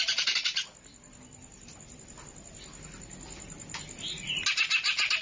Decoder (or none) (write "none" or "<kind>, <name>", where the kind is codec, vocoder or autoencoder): none